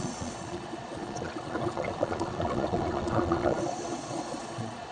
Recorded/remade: remade